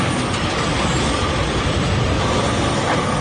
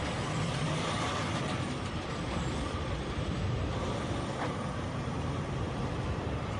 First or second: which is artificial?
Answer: second